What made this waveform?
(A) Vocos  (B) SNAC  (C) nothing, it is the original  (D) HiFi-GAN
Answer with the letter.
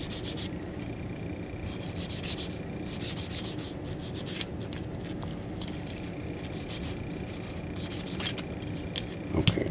C